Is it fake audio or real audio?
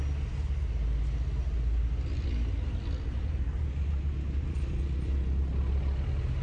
real